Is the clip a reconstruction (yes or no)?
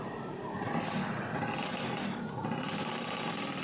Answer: no